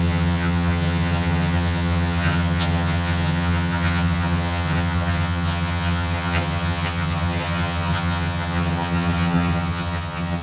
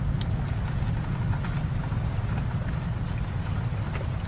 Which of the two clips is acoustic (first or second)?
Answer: second